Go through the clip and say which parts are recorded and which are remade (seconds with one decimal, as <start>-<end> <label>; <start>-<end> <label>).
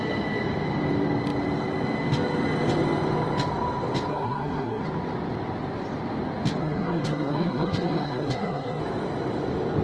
0.0-4.1 recorded; 4.1-4.8 remade; 4.8-6.6 recorded; 6.6-8.8 remade; 8.8-9.8 recorded